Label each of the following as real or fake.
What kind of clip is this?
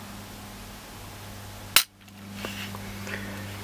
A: real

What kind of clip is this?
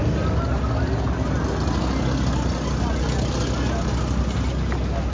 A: real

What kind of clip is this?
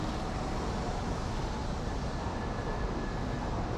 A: real